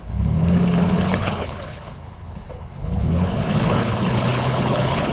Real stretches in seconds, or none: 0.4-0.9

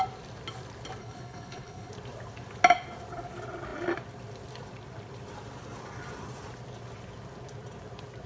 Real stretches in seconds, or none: 0.0-1.0; 1.9-8.3